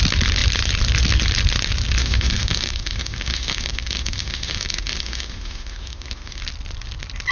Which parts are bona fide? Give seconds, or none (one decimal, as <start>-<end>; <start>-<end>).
0.0-2.0; 6.4-7.3